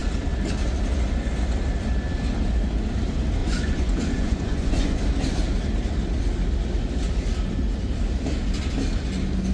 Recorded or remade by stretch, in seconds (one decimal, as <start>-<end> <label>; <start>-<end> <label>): 0.0-3.4 recorded; 3.4-5.0 remade; 5.0-9.5 recorded